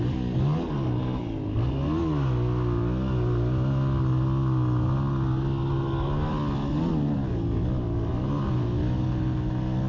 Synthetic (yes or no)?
no